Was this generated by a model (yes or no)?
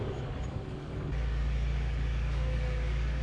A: yes